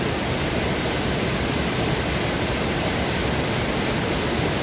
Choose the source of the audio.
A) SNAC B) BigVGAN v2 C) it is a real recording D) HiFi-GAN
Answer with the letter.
C